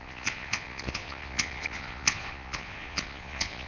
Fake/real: fake